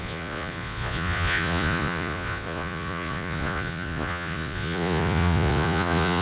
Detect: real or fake fake